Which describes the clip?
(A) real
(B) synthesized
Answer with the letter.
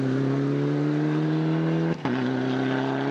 A